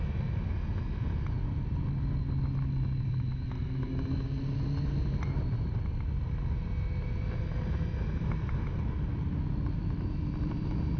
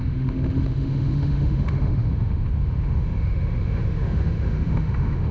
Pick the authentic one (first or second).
first